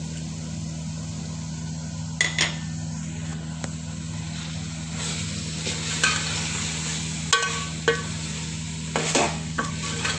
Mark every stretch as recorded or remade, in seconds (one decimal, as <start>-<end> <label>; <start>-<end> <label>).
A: 0.0-9.0 recorded; 9.0-9.7 remade; 9.7-10.2 recorded